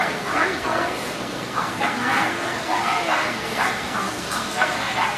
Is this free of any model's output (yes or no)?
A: no